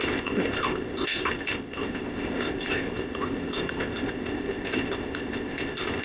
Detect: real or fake fake